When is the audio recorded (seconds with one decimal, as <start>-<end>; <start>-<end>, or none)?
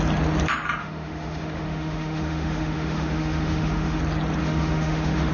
0.0-0.8; 4.0-4.4